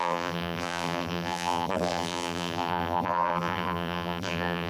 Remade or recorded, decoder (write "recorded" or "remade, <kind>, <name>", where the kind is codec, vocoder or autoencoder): remade, vocoder, BigVGAN v2